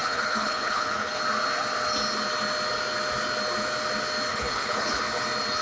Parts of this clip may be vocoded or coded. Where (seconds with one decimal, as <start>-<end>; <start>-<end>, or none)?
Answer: 0.0-1.2; 4.3-5.0